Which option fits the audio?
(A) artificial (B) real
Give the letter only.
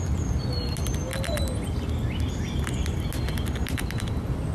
B